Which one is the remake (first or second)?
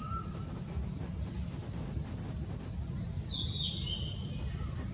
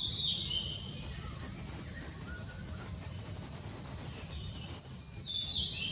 second